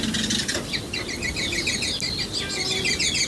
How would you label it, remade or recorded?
recorded